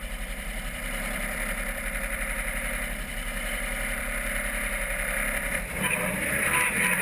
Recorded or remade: remade